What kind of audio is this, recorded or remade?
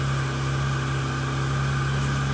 recorded